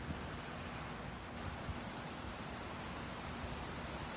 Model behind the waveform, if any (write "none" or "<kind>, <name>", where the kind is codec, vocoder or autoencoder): none